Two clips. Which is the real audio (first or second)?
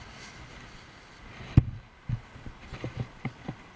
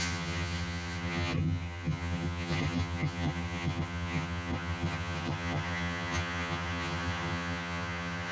first